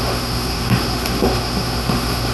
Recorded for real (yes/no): no